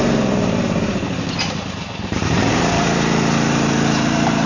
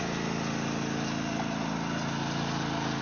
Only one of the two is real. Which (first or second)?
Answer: second